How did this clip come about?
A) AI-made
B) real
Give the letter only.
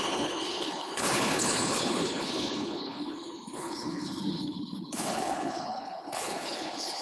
A